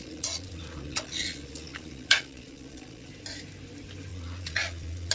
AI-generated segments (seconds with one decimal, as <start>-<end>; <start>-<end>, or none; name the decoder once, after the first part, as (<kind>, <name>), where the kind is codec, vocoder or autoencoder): 0.0-3.1 (vocoder, Vocos); 4.1-5.1